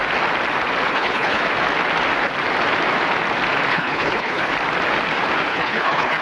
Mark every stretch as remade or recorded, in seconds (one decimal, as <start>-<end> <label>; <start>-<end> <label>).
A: 0.0-0.9 recorded; 0.9-1.4 remade; 1.4-3.7 recorded; 3.7-4.5 remade; 4.5-5.5 recorded; 5.5-6.2 remade